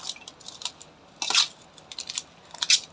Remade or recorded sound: recorded